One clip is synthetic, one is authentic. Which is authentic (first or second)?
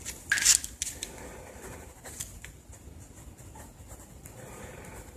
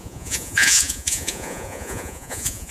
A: first